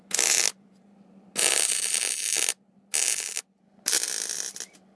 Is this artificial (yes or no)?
no